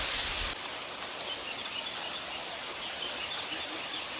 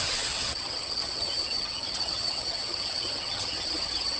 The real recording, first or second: first